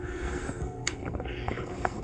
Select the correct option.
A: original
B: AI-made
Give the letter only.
B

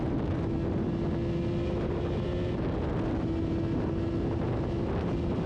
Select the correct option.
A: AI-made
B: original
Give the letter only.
B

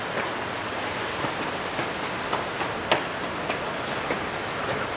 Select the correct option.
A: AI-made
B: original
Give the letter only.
B